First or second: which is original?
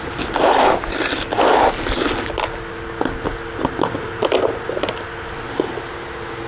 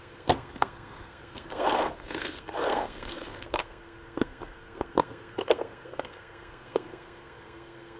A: first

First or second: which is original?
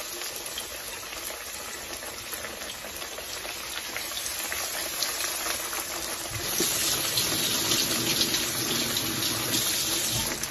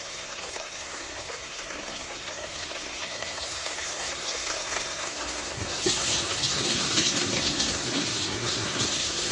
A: first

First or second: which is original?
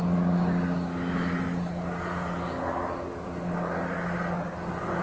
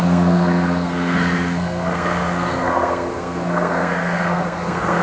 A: first